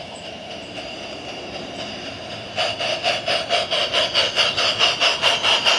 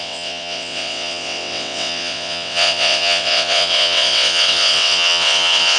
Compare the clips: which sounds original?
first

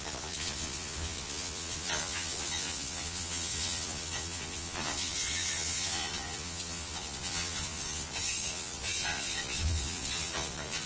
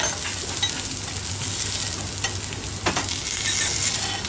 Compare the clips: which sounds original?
second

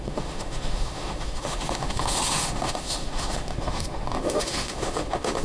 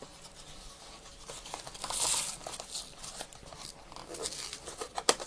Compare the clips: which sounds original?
second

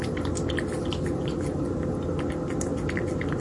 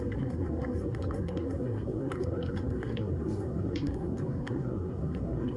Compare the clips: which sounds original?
first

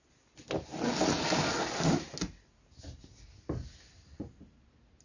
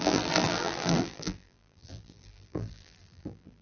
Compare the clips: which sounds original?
first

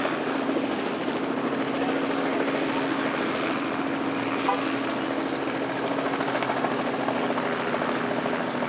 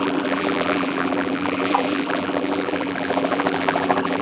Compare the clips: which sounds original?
first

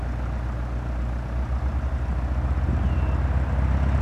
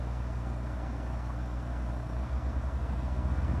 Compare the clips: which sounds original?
first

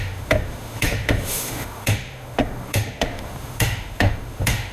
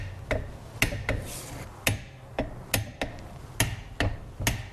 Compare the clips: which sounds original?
second